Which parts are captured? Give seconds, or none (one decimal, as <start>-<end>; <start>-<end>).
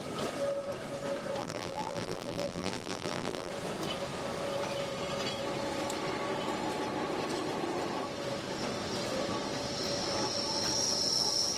0.0-1.4; 3.5-11.6